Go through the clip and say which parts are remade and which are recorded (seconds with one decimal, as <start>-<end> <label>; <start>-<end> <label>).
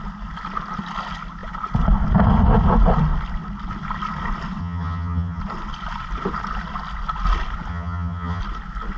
0.0-4.6 recorded; 4.6-5.4 remade; 5.4-7.7 recorded; 7.7-8.4 remade; 8.4-9.0 recorded